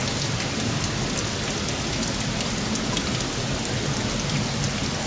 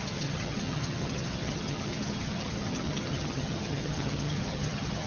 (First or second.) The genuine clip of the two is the first